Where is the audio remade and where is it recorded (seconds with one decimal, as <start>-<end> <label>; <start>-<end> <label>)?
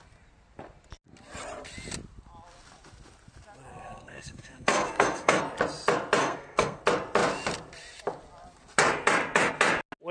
0.0-3.7 recorded; 3.7-5.4 remade; 5.4-6.2 recorded; 6.2-6.8 remade; 6.8-10.1 recorded